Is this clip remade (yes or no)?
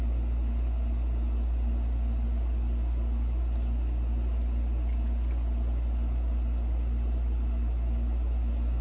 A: no